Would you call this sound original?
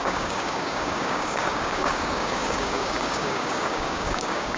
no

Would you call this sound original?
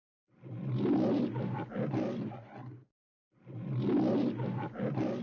yes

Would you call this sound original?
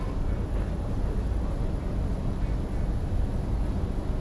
yes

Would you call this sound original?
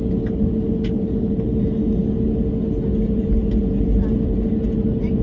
yes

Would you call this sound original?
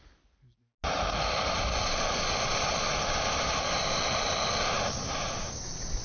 yes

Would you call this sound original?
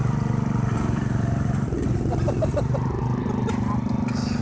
yes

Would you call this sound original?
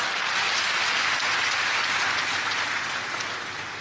yes